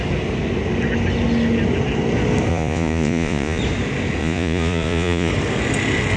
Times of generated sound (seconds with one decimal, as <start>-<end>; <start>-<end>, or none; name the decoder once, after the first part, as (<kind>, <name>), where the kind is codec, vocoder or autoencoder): 2.5-3.6 (vocoder, Vocos); 4.2-5.3

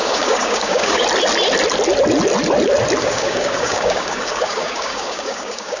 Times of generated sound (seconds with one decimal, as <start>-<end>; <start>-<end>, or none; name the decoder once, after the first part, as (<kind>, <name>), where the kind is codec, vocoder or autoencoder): 0.0-1.0 (codec, DAC); 3.0-5.8

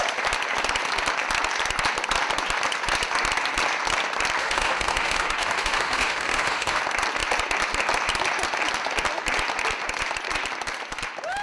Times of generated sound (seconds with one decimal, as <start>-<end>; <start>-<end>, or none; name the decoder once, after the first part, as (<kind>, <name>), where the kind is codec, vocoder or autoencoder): 4.4-6.8 (autoencoder, DAC-VAE)